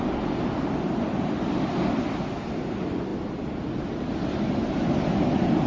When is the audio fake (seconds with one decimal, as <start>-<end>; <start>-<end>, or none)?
none